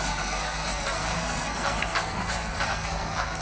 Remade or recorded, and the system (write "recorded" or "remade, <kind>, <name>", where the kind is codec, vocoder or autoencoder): remade, codec, SNAC